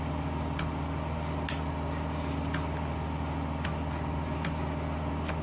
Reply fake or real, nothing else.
real